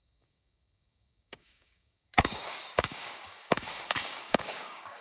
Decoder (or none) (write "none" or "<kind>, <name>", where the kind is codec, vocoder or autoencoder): codec, DAC